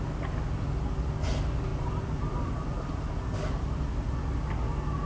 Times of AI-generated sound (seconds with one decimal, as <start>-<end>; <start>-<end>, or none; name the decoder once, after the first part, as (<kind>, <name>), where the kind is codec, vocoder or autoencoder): 1.7-3.1 (vocoder, BigVGAN v2)